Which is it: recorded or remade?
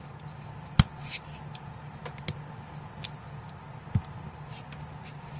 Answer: recorded